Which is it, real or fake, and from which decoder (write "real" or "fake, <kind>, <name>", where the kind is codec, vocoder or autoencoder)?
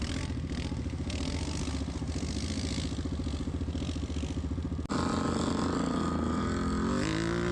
real